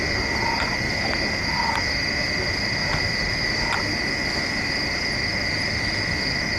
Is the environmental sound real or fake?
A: real